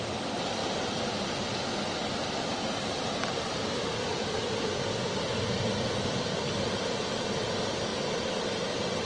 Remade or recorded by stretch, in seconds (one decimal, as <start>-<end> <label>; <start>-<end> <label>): 0.0-9.1 recorded